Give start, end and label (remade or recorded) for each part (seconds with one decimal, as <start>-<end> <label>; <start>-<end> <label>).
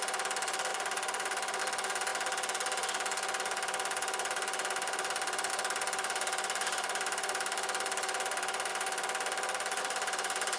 0.0-10.6 recorded